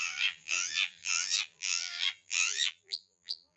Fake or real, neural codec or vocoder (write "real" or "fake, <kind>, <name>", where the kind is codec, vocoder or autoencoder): fake, vocoder, BigVGAN v2